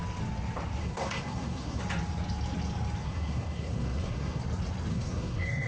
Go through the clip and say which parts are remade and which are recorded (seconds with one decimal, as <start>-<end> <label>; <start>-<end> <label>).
0.0-0.8 recorded; 0.8-1.8 remade; 1.8-3.0 recorded; 3.0-4.4 remade; 4.4-4.9 recorded; 4.9-5.7 remade

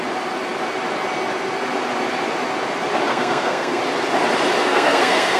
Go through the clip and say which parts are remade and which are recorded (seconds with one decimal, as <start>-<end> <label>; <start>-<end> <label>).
0.0-3.1 recorded; 3.1-3.8 remade; 3.8-4.6 recorded; 4.6-5.4 remade

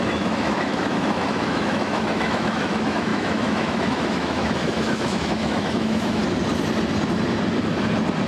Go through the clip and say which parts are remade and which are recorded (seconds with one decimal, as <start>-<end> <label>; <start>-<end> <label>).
0.0-6.2 remade; 6.2-8.3 recorded

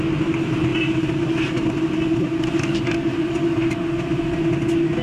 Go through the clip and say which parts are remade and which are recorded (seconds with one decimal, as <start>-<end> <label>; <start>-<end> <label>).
0.0-5.0 recorded

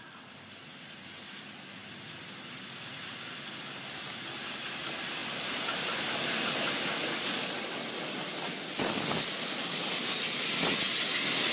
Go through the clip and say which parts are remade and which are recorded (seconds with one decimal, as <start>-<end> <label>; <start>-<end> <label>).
0.0-11.5 recorded

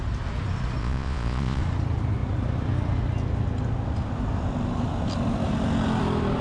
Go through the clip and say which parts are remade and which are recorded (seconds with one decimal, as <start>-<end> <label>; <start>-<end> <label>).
0.0-0.8 recorded; 0.8-1.6 remade; 1.6-6.4 recorded

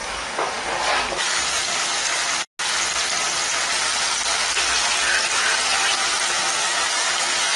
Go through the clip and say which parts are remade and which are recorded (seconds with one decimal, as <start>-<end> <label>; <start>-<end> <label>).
0.0-2.2 remade; 2.2-6.6 recorded; 6.6-7.6 remade

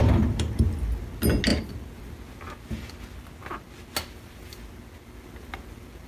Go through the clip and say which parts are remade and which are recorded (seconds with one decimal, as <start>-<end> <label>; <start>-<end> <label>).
0.0-6.1 recorded